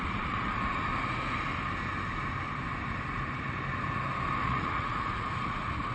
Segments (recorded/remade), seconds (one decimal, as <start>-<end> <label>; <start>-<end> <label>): 0.0-0.9 remade; 0.9-4.4 recorded; 4.4-5.9 remade